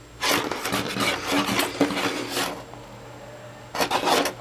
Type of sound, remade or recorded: recorded